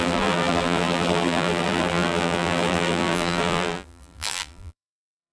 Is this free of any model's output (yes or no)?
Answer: no